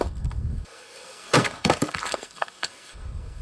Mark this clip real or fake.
fake